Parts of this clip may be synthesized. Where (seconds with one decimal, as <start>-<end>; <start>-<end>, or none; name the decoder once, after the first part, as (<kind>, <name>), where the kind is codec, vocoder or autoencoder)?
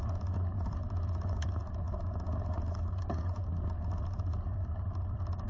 0.0-1.6 (vocoder, BigVGAN v2); 4.2-5.5